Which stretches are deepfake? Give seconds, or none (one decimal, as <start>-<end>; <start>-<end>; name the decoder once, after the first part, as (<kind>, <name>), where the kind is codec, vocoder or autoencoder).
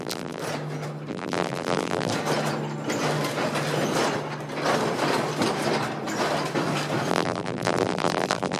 0.0-0.4 (vocoder, BigVGAN v2); 1.1-2.1; 7.1-8.6